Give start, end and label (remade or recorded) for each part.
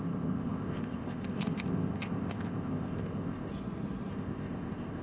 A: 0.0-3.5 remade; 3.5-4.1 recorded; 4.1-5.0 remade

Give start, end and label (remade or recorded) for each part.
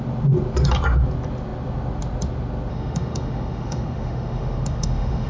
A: 0.0-2.7 recorded; 2.7-5.3 remade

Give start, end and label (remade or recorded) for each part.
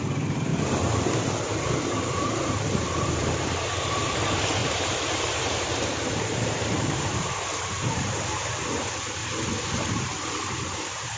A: 0.0-9.2 remade; 9.2-9.9 recorded; 9.9-11.2 remade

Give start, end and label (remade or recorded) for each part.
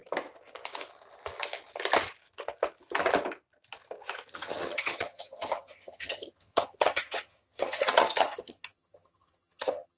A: 0.0-4.3 recorded; 4.3-10.0 remade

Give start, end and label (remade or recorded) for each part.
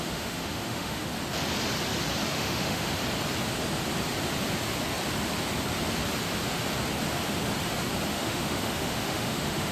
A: 0.0-1.1 remade; 1.1-2.3 recorded; 2.3-3.0 remade; 3.0-8.1 recorded; 8.1-9.7 remade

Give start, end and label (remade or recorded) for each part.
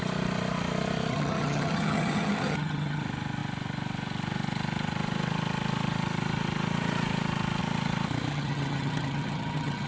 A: 0.0-1.1 recorded; 1.1-3.0 remade; 3.0-8.3 recorded; 8.3-9.9 remade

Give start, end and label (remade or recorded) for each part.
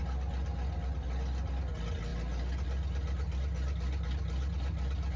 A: 0.0-5.2 recorded